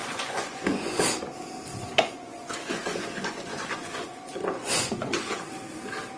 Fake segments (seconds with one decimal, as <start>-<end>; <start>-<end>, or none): 0.0-1.0; 1.7-5.4